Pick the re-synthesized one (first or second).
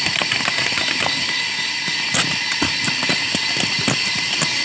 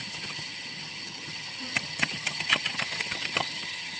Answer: second